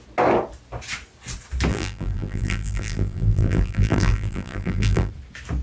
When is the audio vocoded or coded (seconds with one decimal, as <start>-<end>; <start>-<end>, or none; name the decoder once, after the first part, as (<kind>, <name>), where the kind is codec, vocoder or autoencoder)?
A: 1.7-5.1 (vocoder, BigVGAN v2)